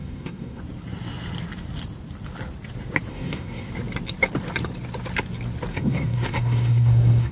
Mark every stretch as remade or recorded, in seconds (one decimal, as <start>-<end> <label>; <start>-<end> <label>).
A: 0.0-0.6 remade; 0.6-3.1 recorded; 3.1-3.7 remade; 3.7-5.7 recorded; 5.7-7.3 remade